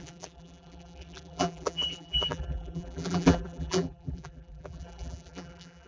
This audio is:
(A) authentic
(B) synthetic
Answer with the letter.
B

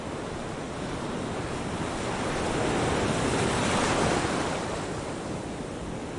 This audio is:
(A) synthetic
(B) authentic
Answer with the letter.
A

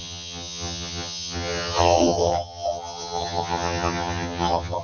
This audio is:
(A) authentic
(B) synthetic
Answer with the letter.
B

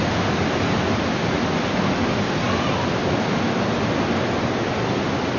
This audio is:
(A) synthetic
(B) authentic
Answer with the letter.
B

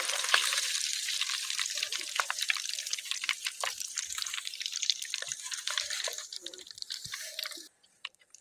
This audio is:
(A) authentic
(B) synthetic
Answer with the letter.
B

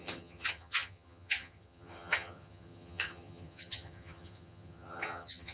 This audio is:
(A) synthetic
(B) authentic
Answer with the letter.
A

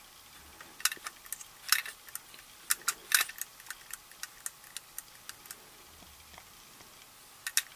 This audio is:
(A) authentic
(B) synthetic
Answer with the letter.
A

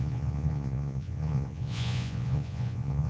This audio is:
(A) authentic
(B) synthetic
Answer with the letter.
B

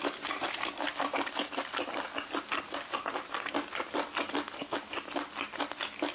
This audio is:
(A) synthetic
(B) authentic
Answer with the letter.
B